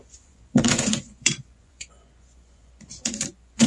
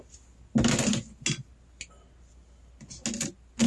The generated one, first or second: first